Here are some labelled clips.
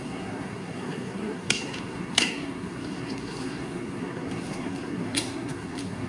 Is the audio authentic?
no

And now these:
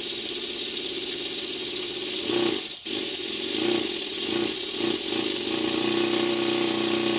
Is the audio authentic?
yes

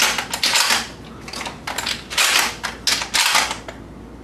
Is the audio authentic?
yes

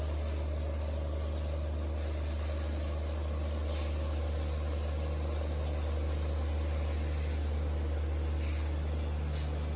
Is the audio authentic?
yes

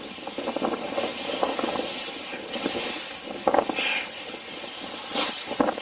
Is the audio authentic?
yes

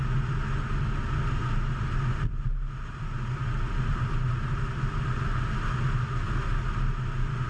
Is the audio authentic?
yes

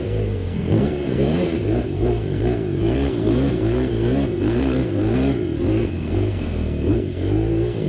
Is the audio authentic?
no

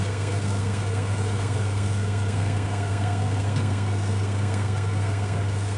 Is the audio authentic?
no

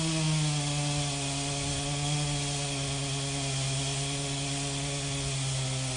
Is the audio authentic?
yes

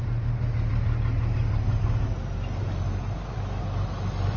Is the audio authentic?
yes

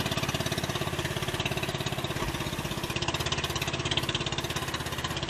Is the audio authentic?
yes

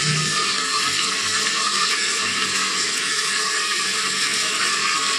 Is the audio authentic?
no